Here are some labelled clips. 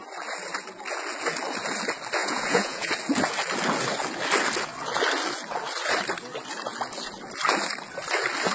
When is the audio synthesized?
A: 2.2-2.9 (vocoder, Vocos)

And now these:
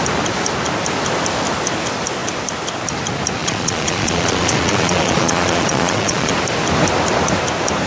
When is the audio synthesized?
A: 3.4-6.3 (vocoder, Vocos)

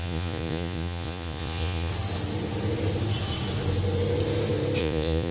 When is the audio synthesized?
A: 0.0-1.9 (vocoder, Vocos); 4.8-5.3

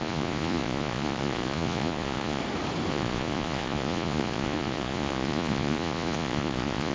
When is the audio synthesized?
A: 0.0-2.4 (vocoder, Vocos); 2.9-6.9

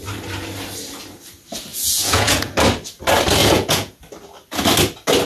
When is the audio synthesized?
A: 1.7-2.5 (vocoder, Vocos); 3.4-4.0

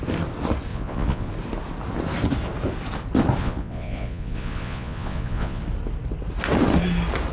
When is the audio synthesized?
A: 0.7-1.3 (vocoder, Vocos); 3.4-5.6

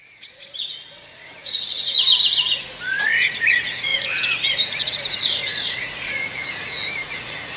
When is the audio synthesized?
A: 0.0-7.6 (vocoder, Vocos)

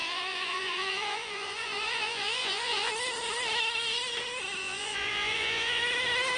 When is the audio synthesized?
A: 0.0-2.9 (vocoder, Vocos); 4.6-5.8